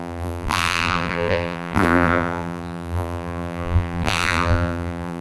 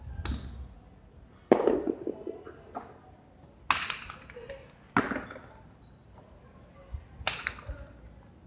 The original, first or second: second